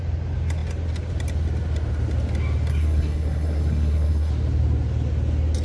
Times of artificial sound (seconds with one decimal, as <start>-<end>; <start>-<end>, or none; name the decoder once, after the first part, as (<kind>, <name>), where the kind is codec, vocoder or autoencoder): 2.7-4.3 (codec, SNAC)